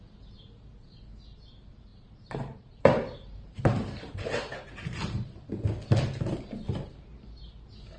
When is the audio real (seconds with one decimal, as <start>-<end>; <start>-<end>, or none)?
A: 0.0-1.9; 5.5-8.0